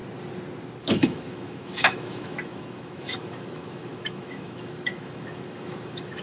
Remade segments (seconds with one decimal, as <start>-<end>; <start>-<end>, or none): 0.8-6.2

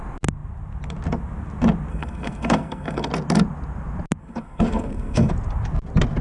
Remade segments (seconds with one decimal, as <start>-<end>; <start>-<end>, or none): 1.9-3.1; 4.2-5.3

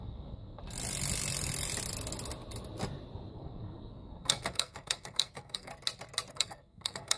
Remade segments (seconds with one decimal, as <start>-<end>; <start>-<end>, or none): 0.0-0.6; 3.3-5.7; 6.3-7.2

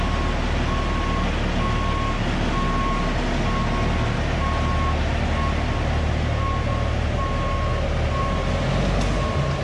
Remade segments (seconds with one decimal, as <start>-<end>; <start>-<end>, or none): 7.7-8.2

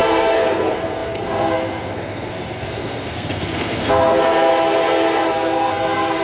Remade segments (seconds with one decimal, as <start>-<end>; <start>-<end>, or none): 0.0-4.5; 5.3-6.2

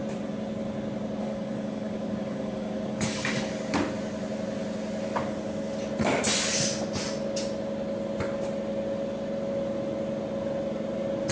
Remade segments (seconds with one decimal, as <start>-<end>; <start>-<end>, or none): 1.2-3.7